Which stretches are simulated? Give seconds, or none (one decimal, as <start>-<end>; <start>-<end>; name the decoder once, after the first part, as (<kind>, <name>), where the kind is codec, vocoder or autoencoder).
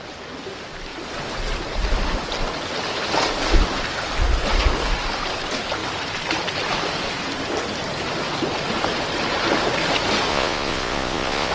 10.3-11.5 (vocoder, Vocos)